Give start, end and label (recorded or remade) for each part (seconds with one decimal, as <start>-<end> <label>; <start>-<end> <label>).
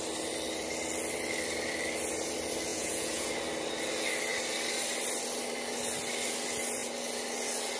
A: 0.0-2.7 recorded; 2.7-3.3 remade; 3.3-7.8 recorded